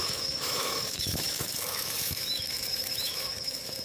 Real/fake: fake